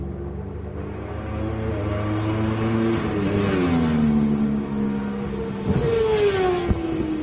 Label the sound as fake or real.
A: real